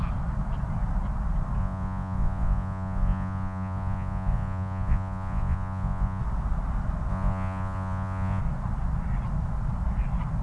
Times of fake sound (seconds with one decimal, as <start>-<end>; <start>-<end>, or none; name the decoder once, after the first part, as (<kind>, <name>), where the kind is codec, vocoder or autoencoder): 1.6-6.2 (vocoder, Vocos); 7.1-8.4